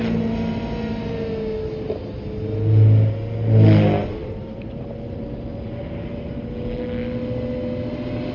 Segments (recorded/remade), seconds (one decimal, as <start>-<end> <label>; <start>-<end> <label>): 0.0-4.2 recorded; 4.2-6.3 remade; 6.3-8.3 recorded